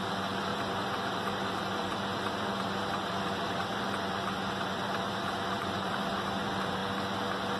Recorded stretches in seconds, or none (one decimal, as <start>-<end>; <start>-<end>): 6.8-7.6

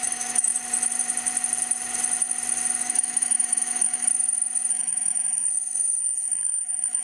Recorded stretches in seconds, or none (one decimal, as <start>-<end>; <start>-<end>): 0.5-2.8; 4.1-4.7; 5.5-6.0

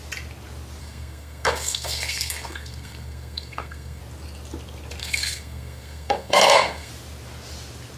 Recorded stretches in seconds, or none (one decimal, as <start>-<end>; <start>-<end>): 0.0-0.8; 4.0-5.0; 6.9-8.0

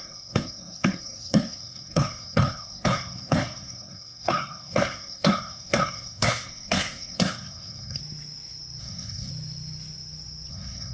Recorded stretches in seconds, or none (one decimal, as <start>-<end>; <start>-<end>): 8.0-8.8; 9.3-10.5

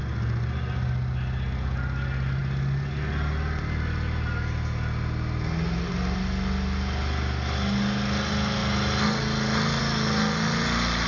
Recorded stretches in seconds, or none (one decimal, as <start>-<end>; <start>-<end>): 0.0-11.1